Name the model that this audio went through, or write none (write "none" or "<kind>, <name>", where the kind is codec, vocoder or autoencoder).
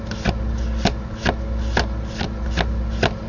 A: none